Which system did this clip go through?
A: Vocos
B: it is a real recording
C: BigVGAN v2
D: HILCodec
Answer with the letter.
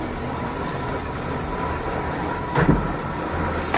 B